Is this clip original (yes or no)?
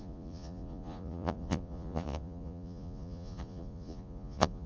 no